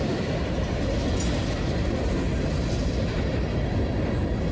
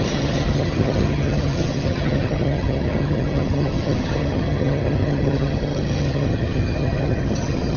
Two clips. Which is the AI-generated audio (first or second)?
second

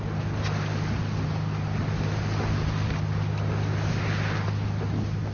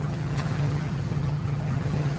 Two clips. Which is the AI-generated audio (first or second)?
second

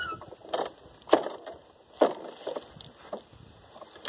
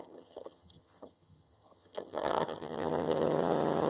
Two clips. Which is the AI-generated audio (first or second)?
second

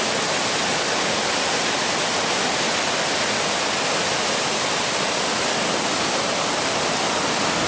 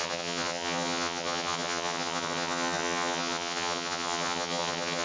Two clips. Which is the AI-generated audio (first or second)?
second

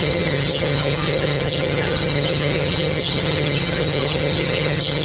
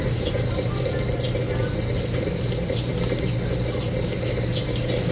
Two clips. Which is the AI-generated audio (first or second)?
first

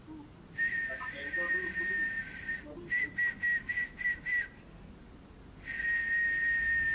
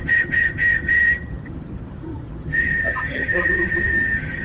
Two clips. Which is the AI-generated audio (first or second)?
second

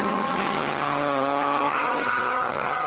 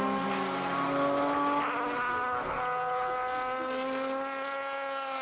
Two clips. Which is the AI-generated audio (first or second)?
first